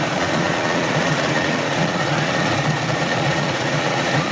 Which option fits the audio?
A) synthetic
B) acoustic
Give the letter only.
A